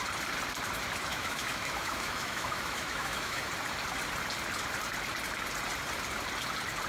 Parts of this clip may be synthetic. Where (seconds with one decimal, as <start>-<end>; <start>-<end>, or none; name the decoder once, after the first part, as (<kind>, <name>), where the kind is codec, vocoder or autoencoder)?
1.1-3.5 (autoencoder, DAC-VAE)